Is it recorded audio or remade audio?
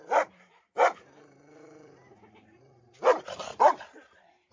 remade